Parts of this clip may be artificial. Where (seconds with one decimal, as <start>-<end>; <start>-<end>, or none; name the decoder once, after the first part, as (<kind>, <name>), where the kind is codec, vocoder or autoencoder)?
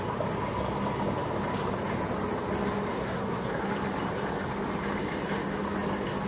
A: 2.9-3.7 (codec, SNAC)